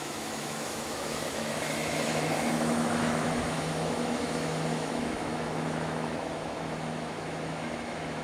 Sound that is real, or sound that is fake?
fake